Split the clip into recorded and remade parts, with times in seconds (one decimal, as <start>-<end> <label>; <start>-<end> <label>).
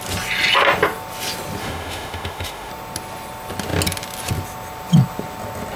0.0-1.6 recorded; 1.6-2.7 remade; 2.7-5.8 recorded